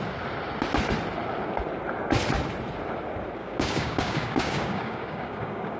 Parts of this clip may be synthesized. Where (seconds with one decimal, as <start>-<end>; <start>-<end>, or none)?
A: 3.4-5.8